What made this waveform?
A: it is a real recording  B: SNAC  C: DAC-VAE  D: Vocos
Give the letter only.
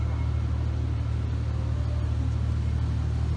A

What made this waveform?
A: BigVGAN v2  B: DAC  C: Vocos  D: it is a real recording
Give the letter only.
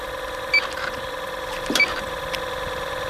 A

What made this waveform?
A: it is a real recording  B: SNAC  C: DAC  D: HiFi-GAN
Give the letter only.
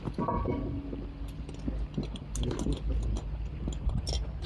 A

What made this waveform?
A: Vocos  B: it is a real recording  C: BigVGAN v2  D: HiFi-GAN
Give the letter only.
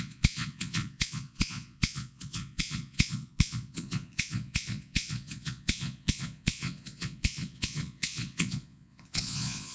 A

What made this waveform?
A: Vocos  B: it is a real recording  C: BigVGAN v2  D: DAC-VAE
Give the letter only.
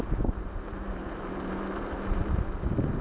C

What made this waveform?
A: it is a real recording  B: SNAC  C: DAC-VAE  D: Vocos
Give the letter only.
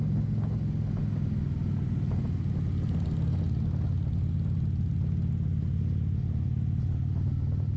A